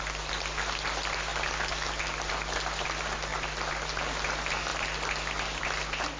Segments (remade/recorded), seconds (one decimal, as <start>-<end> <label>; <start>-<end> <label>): 0.0-6.2 recorded